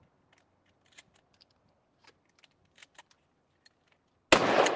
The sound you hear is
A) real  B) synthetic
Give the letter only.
A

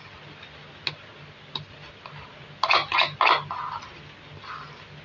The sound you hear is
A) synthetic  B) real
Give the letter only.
B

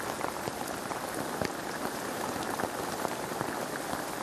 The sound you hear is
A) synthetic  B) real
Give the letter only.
B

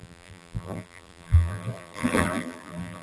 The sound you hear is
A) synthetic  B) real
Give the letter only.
A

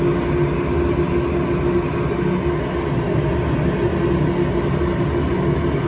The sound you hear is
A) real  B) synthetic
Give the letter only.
A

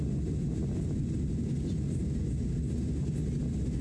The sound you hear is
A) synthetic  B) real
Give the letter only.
B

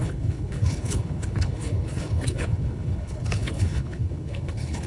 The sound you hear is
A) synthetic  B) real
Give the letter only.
A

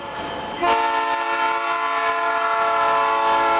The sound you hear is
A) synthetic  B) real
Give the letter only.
B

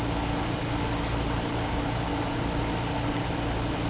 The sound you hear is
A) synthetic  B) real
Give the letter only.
B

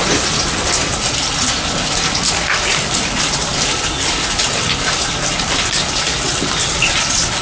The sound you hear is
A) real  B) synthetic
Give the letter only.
A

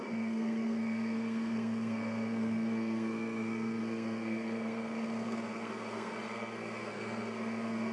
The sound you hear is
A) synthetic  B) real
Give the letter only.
A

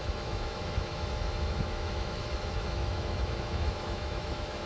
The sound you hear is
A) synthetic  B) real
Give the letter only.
A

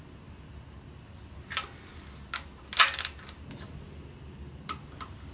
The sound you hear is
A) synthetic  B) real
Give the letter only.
B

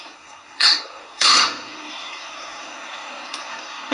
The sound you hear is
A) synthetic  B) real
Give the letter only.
A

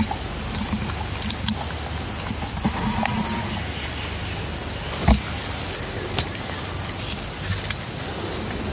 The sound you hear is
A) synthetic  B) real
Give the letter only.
B